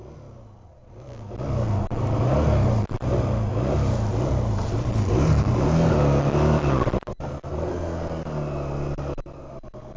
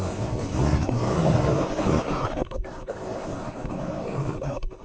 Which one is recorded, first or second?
first